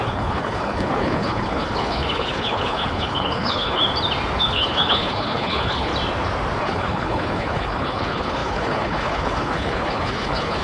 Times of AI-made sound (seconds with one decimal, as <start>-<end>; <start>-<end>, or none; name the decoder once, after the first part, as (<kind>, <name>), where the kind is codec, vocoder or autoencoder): 0.0-3.8 (codec, HILCodec); 4.4-5.9; 6.6-10.6